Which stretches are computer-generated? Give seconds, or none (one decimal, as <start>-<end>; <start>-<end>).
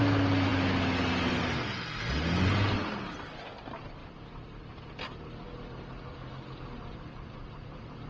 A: none